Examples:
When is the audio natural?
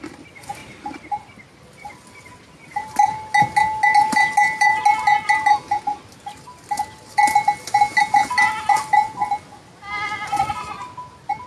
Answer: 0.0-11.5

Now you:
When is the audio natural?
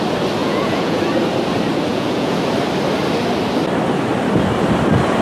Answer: 0.0-0.4; 1.0-1.9; 2.4-5.2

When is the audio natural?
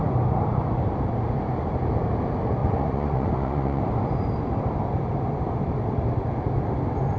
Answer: 0.0-2.6; 3.8-7.2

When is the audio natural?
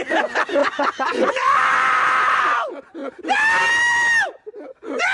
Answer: 0.0-0.6; 2.0-5.1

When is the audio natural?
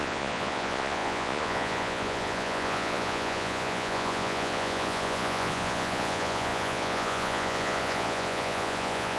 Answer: none